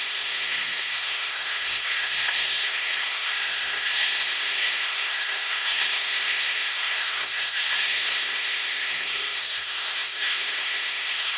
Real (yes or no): no